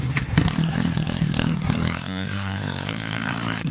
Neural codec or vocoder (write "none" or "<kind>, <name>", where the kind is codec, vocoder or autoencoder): codec, SNAC